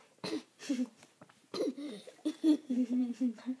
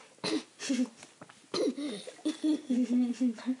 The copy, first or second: first